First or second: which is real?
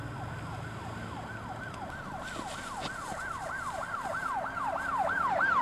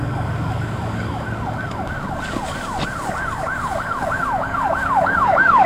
first